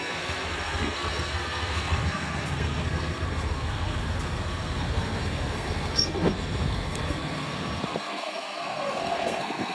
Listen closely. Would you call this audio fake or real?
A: fake